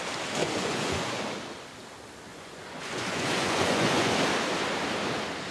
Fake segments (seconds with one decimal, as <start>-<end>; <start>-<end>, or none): 0.4-1.2; 2.3-4.2